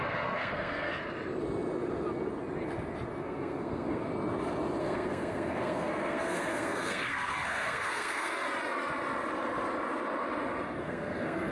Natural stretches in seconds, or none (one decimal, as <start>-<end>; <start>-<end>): 1.0-3.2; 4.1-4.8; 8.4-10.8